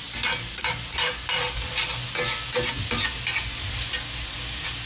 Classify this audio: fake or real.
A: real